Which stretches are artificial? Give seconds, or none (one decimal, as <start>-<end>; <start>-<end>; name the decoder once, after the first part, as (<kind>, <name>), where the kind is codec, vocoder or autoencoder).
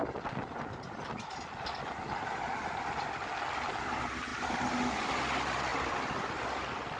none